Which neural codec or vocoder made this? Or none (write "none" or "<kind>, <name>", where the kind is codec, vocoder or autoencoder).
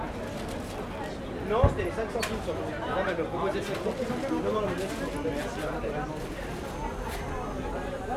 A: none